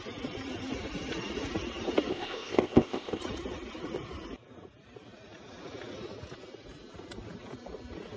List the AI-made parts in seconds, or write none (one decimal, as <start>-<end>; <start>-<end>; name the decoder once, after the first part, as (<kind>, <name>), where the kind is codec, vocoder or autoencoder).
2.1-3.2 (codec, ZipCodec)